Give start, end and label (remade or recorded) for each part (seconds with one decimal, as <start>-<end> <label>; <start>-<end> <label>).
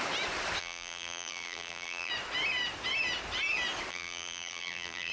0.0-0.6 recorded; 0.6-2.1 remade; 2.1-3.9 recorded; 3.9-5.1 remade